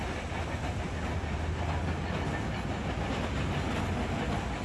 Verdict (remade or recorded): recorded